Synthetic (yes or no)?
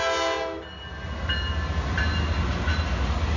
no